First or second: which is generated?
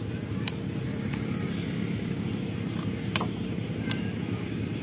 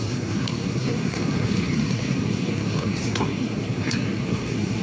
second